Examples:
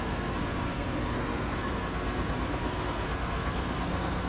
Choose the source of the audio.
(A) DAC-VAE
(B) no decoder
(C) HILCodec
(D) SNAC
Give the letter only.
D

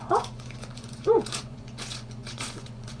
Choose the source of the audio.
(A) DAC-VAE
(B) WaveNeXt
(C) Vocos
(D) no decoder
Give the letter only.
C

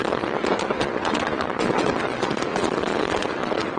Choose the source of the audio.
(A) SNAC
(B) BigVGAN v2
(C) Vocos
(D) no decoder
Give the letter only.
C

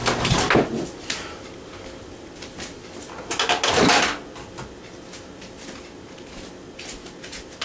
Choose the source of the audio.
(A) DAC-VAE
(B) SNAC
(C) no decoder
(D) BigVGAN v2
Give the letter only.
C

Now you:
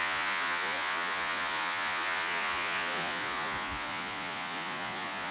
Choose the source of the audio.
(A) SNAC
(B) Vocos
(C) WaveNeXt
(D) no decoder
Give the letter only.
B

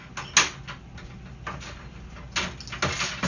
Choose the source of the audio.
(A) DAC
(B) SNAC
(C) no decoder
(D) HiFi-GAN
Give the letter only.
C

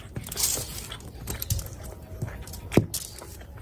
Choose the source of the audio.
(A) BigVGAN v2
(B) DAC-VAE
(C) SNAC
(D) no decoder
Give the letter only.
D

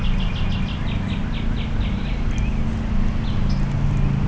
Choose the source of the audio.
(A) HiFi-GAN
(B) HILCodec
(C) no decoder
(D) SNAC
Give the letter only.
C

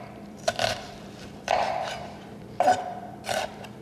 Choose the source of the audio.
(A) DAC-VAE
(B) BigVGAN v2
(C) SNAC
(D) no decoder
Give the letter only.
B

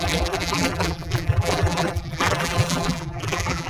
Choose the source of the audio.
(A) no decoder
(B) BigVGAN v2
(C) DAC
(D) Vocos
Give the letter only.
B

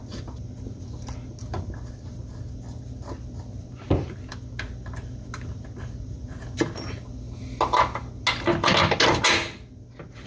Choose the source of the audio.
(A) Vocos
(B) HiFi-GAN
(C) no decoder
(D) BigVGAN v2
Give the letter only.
C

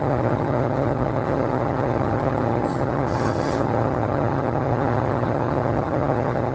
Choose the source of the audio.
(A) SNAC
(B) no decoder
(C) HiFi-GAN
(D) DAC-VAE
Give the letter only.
C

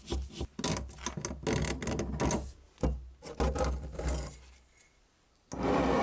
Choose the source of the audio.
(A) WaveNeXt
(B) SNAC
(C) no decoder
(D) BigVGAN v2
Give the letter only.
C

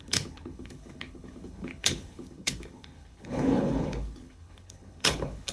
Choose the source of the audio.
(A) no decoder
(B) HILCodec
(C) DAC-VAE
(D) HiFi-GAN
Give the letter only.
B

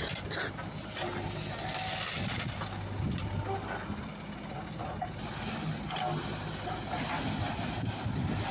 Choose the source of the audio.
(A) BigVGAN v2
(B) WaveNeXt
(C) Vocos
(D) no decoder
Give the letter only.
D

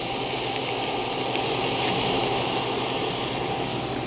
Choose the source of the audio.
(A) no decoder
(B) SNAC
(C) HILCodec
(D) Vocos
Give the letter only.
A